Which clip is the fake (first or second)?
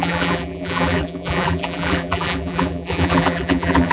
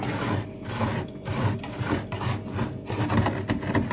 first